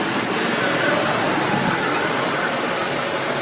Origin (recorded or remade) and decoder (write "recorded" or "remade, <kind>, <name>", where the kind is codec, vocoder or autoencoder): recorded